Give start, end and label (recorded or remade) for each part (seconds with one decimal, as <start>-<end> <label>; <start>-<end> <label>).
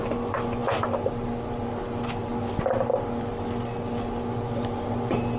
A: 0.0-5.4 recorded